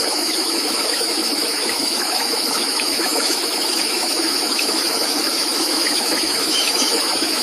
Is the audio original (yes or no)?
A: no